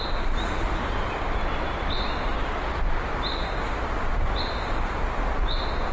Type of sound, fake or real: real